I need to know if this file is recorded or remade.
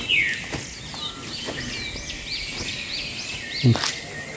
recorded